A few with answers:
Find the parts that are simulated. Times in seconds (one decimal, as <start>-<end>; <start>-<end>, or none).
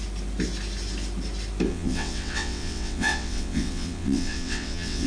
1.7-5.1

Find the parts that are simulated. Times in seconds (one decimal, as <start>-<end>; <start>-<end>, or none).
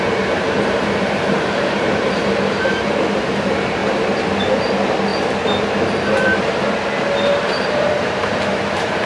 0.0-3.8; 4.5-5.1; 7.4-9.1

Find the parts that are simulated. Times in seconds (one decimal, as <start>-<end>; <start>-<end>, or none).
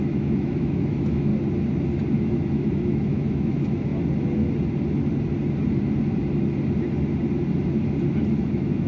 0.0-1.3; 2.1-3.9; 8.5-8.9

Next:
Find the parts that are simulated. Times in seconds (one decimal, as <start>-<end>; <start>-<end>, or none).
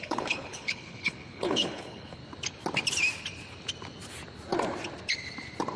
0.0-2.2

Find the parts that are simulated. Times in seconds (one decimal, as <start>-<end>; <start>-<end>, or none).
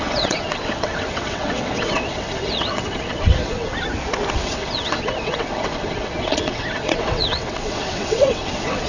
0.0-3.7; 4.3-8.9